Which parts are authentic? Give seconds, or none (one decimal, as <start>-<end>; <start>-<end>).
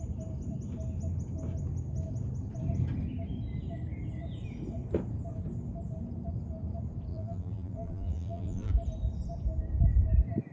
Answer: 0.0-7.1; 8.7-10.5